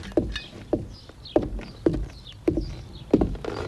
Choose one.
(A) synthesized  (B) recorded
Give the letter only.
B